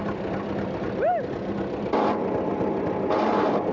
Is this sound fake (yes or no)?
no